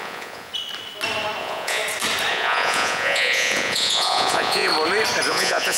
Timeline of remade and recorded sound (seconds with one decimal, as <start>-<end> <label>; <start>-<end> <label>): 0.0-0.5 remade; 0.5-1.4 recorded; 1.4-1.8 remade; 1.8-2.3 recorded; 2.3-4.7 remade; 4.7-5.3 recorded; 5.3-5.8 remade